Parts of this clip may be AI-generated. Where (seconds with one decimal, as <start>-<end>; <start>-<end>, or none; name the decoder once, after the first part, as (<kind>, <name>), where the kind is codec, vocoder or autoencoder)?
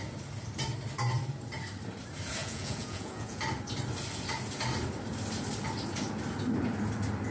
2.4-3.4 (vocoder, Vocos)